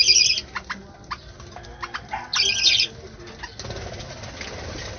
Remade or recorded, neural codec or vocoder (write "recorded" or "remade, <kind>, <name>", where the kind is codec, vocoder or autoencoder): recorded